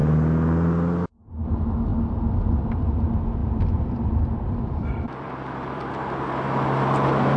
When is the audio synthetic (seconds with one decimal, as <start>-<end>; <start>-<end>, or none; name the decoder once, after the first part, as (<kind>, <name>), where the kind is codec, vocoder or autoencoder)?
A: 3.4-5.9 (vocoder, BigVGAN v2)